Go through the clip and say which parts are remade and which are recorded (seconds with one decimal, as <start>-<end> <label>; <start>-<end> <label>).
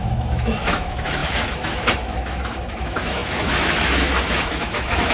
0.0-5.1 remade